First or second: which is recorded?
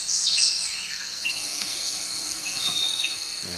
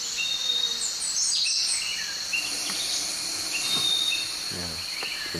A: second